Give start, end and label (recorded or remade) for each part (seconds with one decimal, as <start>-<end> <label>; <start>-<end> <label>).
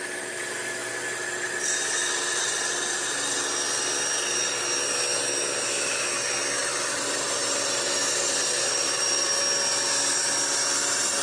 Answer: 0.0-6.6 recorded; 6.6-9.4 remade; 9.4-11.2 recorded